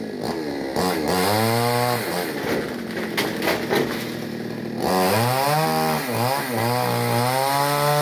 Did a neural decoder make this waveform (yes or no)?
no